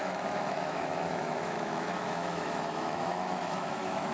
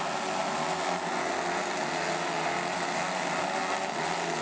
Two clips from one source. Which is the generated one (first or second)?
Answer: first